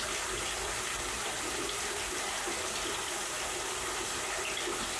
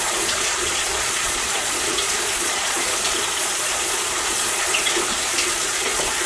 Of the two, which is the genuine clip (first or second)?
first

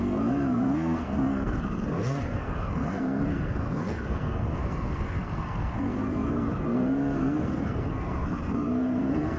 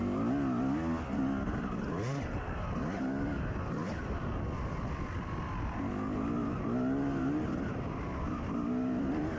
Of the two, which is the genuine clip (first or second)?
second